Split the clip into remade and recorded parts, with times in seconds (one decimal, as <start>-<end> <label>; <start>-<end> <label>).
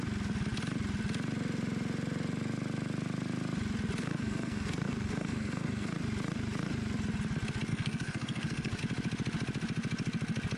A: 0.0-4.0 recorded; 4.0-5.9 remade; 5.9-7.7 recorded; 7.7-8.8 remade; 8.8-10.6 recorded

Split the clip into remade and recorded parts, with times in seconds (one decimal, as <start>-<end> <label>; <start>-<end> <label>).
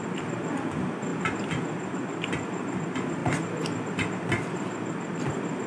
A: 0.0-5.7 recorded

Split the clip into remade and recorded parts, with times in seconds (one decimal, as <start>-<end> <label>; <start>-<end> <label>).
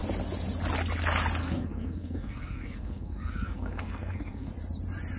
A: 0.0-1.4 recorded; 1.4-4.5 remade; 4.5-5.2 recorded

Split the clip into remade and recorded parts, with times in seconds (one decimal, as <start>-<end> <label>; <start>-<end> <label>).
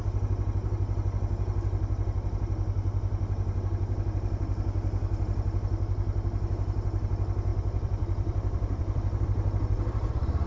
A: 0.0-7.5 recorded; 7.5-10.1 remade; 10.1-10.5 recorded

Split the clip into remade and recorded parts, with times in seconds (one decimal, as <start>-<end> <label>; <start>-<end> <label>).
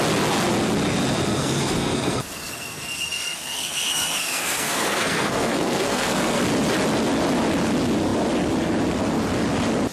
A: 0.0-1.4 recorded; 1.4-6.4 remade; 6.4-9.9 recorded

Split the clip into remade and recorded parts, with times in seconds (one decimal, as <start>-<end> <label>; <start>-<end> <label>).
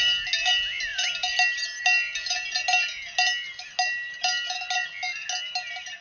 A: 0.0-6.0 recorded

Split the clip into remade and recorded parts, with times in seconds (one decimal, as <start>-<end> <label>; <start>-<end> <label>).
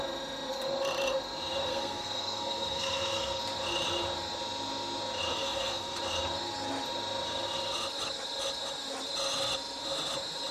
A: 0.0-1.7 recorded; 1.7-3.4 remade; 3.4-5.3 recorded; 5.3-6.0 remade; 6.0-10.5 recorded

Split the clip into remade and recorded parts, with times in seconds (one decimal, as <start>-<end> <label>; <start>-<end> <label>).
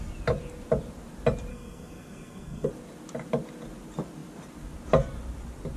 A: 0.0-1.5 recorded; 1.5-2.7 remade; 2.7-5.8 recorded